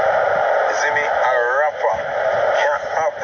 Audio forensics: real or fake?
real